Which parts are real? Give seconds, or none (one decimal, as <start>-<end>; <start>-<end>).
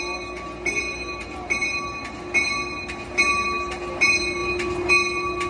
0.0-5.5